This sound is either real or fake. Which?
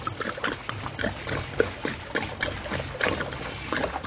real